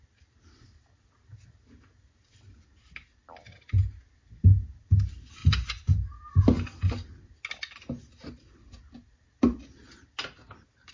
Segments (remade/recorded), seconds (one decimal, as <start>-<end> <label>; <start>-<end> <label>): 0.0-10.9 recorded